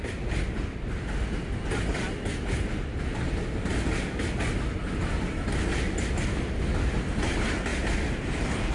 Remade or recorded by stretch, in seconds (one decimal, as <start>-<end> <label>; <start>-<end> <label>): 0.0-8.7 recorded